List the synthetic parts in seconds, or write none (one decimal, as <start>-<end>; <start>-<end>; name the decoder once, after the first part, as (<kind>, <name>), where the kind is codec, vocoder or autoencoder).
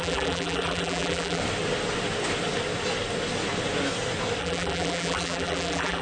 0.0-1.4 (vocoder, BigVGAN v2); 4.4-6.0